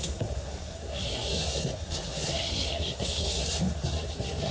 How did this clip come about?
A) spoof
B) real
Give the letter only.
A